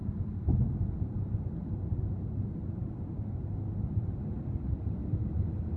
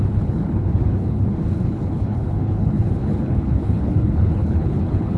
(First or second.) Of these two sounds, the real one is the first